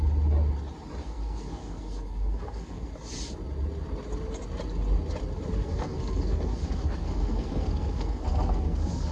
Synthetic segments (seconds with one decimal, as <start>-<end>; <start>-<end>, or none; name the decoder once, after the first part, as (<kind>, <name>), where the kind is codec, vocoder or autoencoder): 1.0-2.9 (codec, SNAC); 5.6-9.1